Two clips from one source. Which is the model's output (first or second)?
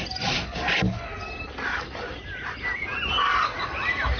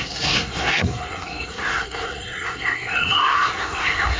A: second